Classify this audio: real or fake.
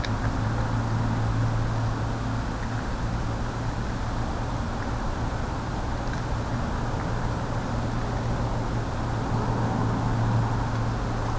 real